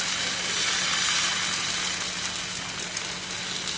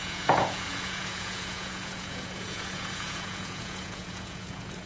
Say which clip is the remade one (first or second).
second